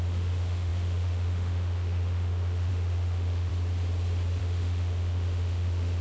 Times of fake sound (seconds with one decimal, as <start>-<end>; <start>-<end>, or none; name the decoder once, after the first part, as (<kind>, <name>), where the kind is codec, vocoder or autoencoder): 0.0-3.5 (autoencoder, DAC-VAE); 4.4-6.0